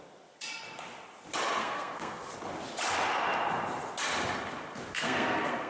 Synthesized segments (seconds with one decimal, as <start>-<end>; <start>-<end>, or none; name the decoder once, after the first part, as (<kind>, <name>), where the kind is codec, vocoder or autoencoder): 1.6-2.3 (codec, SNAC); 4.9-5.7